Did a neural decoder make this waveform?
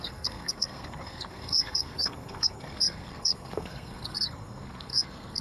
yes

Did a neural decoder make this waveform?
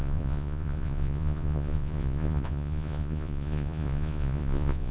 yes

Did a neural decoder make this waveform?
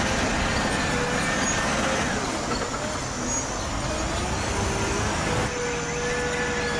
no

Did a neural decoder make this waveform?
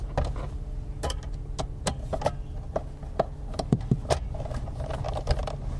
no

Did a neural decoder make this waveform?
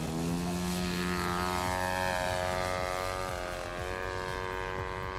no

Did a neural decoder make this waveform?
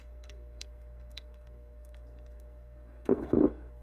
yes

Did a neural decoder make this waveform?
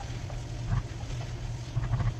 yes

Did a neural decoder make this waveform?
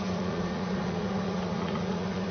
yes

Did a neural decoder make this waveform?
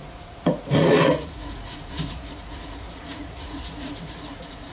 yes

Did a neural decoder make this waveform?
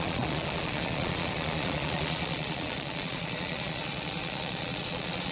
yes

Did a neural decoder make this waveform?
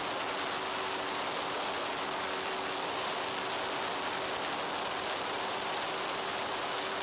no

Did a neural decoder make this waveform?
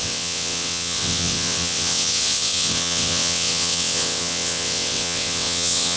yes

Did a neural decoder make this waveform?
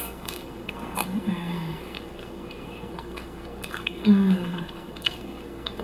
yes